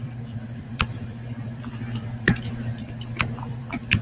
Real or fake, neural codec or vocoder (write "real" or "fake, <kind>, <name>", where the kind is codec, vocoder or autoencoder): fake, vocoder, BigVGAN v2